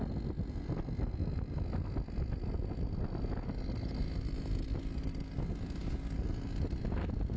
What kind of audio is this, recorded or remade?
recorded